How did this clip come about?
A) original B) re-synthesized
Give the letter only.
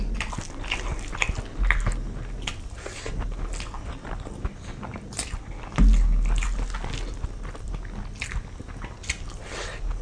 A